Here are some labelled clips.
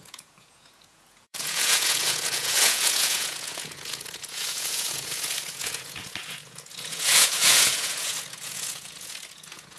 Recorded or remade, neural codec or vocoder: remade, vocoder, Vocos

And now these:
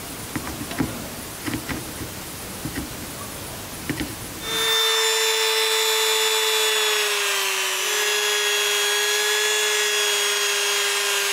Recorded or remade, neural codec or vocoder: recorded